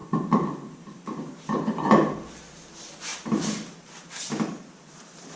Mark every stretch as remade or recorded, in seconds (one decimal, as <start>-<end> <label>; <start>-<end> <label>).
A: 0.0-2.3 remade; 2.3-5.4 recorded

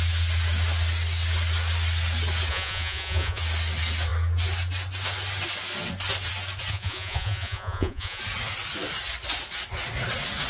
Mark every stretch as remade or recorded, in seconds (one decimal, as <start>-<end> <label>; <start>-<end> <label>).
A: 0.0-2.5 recorded; 2.5-3.4 remade; 3.4-6.7 recorded; 6.7-8.2 remade; 8.2-10.5 recorded

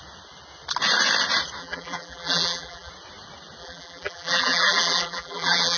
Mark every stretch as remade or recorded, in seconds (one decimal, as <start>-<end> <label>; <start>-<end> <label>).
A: 0.0-1.6 recorded; 1.6-2.9 remade; 2.9-3.6 recorded; 3.6-5.8 remade

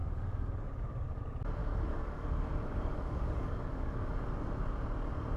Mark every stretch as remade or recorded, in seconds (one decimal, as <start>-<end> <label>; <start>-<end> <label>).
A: 0.0-1.2 remade; 1.2-1.6 recorded; 1.6-4.1 remade; 4.1-5.4 recorded

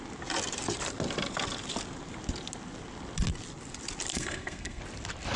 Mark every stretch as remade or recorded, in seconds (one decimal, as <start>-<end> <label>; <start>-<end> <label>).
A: 0.0-4.1 recorded; 4.1-4.8 remade; 4.8-5.4 recorded

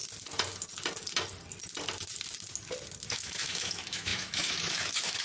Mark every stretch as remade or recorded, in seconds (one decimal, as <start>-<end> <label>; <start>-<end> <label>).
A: 0.0-3.1 recorded; 3.1-5.2 remade

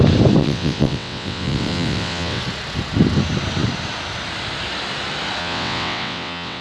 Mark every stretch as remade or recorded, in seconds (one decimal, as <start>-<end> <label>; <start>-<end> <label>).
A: 0.0-0.4 recorded; 0.4-2.4 remade; 2.4-5.4 recorded; 5.4-6.6 remade